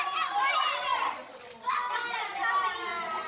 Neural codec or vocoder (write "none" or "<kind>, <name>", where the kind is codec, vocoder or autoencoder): none